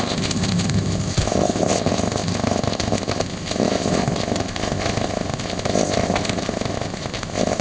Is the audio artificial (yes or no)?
yes